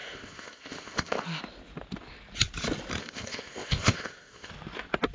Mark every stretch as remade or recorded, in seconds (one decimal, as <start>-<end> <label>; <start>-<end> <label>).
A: 0.0-1.4 remade; 1.4-3.0 recorded; 3.0-4.5 remade; 4.5-5.1 recorded